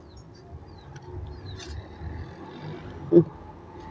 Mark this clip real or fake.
real